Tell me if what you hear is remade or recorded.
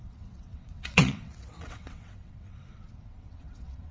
remade